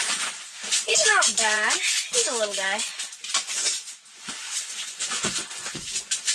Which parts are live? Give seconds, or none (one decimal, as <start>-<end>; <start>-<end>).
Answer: none